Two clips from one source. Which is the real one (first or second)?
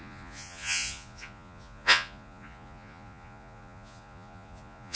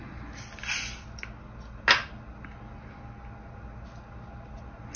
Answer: second